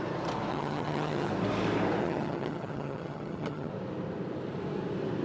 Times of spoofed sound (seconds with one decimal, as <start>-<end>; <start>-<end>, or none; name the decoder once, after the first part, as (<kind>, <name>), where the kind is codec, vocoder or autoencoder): 0.5-1.3 (vocoder, HiFi-GAN); 2.0-3.7